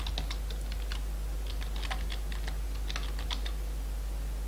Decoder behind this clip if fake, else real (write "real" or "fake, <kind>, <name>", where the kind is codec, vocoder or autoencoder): real